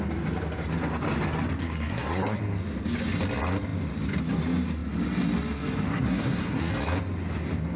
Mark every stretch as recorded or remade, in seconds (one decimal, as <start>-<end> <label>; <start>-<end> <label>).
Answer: 0.0-1.6 recorded; 1.6-2.4 remade; 2.4-5.9 recorded; 5.9-6.7 remade; 6.7-7.8 recorded

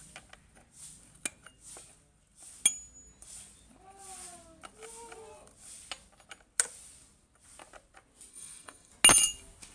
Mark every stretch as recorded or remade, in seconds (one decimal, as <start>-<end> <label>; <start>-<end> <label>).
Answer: 0.0-8.3 recorded; 8.3-8.9 remade; 8.9-9.7 recorded

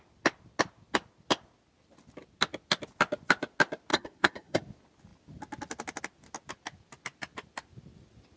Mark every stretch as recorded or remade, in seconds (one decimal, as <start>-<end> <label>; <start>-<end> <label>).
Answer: 0.0-3.9 recorded; 3.9-4.6 remade; 4.6-8.4 recorded

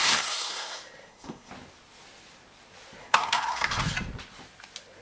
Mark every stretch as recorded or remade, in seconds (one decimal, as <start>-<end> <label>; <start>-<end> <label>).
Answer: 0.0-1.5 remade; 1.5-3.0 recorded; 3.0-3.8 remade; 3.8-5.0 recorded

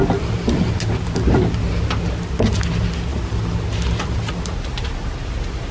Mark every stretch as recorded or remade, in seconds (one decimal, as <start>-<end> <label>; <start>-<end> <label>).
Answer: 0.0-5.7 recorded

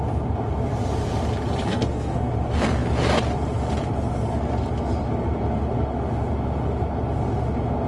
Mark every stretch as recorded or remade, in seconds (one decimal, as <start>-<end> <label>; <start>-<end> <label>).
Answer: 0.0-1.7 recorded; 1.7-2.3 remade; 2.3-7.9 recorded

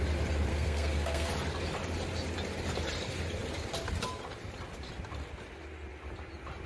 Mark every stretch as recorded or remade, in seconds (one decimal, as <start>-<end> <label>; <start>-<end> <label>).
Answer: 0.0-0.5 recorded; 0.5-1.3 remade; 1.3-6.7 recorded

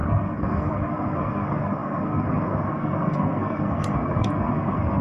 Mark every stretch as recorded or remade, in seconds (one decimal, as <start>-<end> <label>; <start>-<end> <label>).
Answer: 0.0-5.0 remade